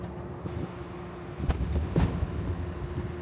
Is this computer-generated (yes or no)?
no